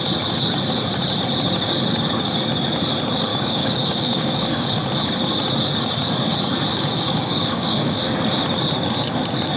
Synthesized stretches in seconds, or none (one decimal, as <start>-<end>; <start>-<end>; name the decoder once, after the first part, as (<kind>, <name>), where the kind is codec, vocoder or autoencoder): 3.3-4.7 (codec, DAC); 6.7-8.0